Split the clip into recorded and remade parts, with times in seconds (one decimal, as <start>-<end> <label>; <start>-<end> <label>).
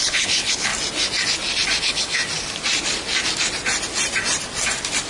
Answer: 0.0-0.7 remade; 0.7-1.8 recorded; 1.8-2.2 remade; 2.2-5.1 recorded